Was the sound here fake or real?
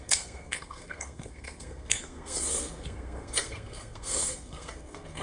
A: fake